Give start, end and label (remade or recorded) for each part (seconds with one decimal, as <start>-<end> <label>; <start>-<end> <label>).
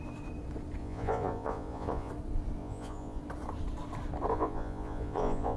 0.0-0.8 recorded; 0.8-2.1 remade; 2.1-2.6 recorded; 2.6-3.2 remade; 3.2-4.3 recorded; 4.3-5.6 remade